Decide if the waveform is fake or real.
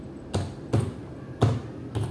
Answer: real